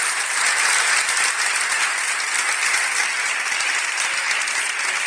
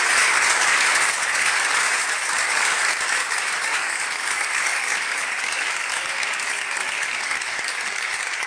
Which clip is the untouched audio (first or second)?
first